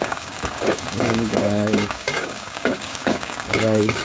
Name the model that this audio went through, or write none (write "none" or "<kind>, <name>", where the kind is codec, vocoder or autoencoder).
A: codec, DAC